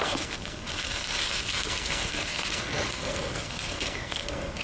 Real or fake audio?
fake